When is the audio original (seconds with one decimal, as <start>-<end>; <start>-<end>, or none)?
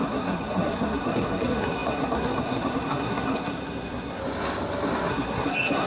4.2-5.1